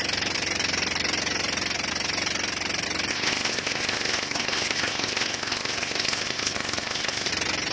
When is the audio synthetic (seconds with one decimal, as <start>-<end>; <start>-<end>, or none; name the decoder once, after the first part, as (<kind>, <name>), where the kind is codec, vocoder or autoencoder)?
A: 3.1-7.3 (codec, ZipCodec)